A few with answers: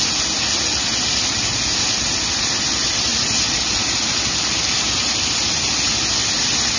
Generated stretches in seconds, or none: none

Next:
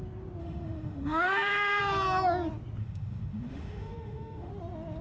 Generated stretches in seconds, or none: 0.4-1.8 (autoencoder, DAC-VAE); 2.8-4.5

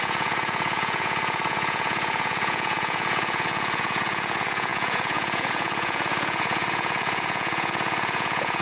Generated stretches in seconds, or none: 0.0-8.6 (vocoder, Vocos)